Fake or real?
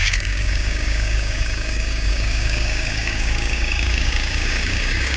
fake